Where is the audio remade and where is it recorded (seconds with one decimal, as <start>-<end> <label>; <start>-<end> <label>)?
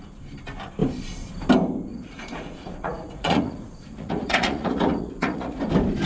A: 0.0-1.9 recorded; 1.9-5.6 remade; 5.6-6.1 recorded